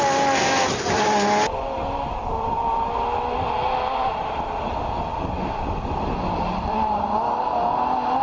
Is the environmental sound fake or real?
real